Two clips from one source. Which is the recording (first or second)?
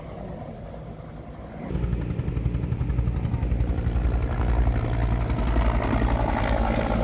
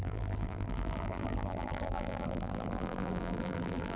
first